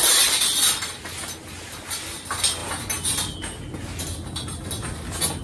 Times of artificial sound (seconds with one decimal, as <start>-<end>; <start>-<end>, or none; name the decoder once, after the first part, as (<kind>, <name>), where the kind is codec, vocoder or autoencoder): none